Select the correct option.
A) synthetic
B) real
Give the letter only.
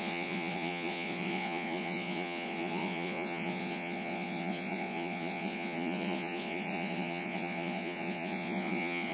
A